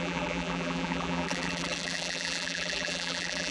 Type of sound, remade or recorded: remade